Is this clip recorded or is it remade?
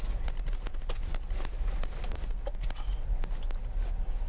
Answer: recorded